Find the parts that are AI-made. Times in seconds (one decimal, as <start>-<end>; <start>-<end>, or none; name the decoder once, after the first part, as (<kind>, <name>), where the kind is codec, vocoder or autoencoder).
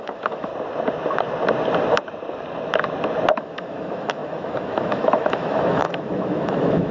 0.0-0.5 (autoencoder, DAC-VAE); 3.4-6.9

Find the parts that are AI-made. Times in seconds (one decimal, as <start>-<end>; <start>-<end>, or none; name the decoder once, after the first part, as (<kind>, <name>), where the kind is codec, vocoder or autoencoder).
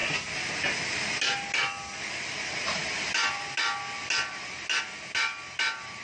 none